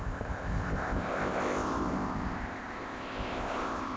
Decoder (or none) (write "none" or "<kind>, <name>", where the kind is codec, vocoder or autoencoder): codec, ZipCodec